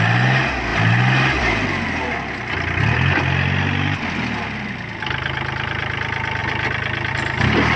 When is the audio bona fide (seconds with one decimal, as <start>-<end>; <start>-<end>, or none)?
0.0-7.8